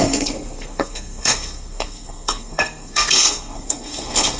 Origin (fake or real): fake